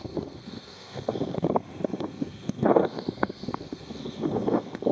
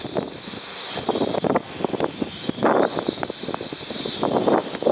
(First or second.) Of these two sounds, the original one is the second